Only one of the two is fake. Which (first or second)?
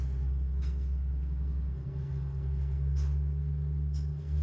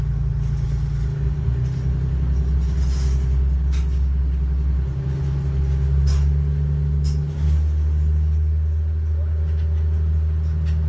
first